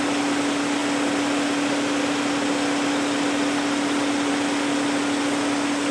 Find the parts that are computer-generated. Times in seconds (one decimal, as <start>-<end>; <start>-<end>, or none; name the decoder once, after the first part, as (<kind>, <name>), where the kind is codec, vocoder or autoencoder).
none